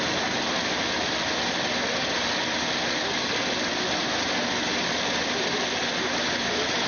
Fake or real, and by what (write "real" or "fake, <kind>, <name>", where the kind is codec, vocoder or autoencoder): real